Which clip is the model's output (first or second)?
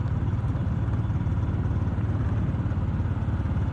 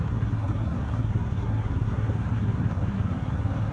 second